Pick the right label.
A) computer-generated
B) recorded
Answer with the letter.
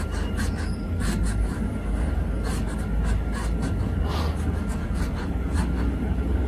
A